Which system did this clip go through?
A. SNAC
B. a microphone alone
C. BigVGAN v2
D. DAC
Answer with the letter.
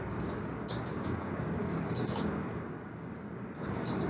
D